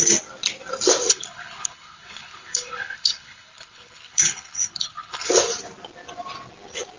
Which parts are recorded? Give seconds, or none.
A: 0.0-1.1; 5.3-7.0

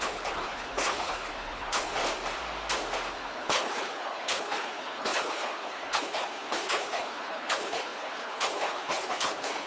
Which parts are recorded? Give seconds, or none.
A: 2.0-3.1

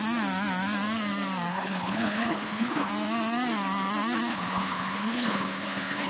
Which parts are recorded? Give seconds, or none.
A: 0.0-1.5; 2.9-4.3

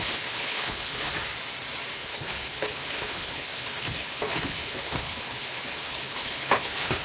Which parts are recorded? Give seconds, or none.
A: 1.1-1.9

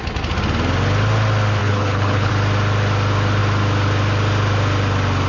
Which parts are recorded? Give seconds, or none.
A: 0.0-1.6; 2.3-5.3

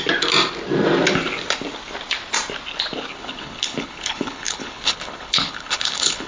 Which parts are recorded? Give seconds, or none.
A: 0.0-3.1